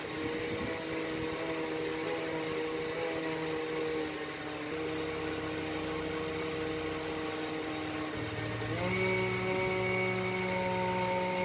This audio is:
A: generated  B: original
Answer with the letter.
B